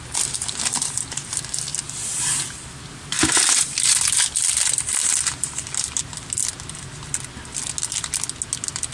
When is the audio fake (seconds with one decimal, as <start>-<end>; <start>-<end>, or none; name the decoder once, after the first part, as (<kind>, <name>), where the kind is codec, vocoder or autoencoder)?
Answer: none

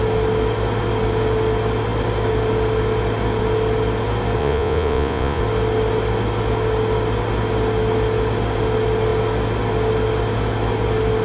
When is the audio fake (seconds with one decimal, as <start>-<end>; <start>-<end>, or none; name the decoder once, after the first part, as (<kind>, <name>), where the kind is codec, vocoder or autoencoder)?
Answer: 4.4-5.4 (vocoder, Vocos)

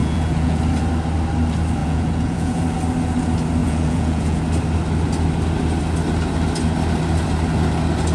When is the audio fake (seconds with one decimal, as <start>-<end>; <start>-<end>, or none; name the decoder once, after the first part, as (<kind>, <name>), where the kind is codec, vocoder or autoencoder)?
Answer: 0.0-0.6 (vocoder, Vocos); 1.8-2.6; 3.6-4.4

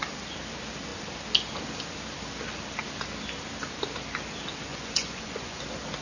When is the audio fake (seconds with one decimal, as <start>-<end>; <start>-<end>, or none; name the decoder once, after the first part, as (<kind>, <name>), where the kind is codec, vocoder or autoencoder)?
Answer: 4.7-5.6 (vocoder, Vocos)

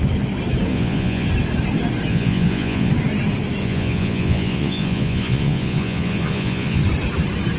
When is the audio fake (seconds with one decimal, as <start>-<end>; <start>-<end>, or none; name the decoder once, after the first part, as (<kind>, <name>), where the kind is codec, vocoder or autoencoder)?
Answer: 0.7-1.3 (vocoder, Vocos); 2.1-2.9; 3.6-6.8

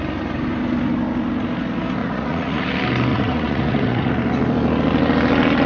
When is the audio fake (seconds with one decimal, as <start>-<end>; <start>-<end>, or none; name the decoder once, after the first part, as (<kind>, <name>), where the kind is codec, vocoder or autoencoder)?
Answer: 2.0-2.6 (vocoder, Vocos); 3.1-4.1

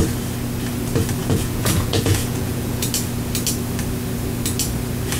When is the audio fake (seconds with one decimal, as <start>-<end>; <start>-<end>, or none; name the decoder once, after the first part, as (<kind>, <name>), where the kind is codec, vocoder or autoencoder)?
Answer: 1.2-2.9 (vocoder, Vocos)

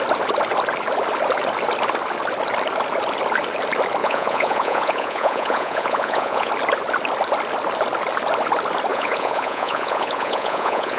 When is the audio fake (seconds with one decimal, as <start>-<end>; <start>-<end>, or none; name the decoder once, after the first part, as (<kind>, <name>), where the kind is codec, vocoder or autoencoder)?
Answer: 4.0-6.5 (vocoder, Vocos); 8.9-11.0